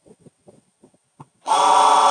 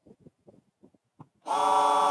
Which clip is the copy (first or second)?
first